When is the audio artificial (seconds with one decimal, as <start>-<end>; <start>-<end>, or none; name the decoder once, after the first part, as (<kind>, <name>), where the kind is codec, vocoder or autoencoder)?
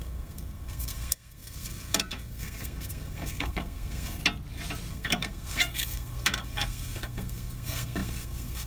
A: 0.0-4.2 (codec, SNAC); 4.9-8.7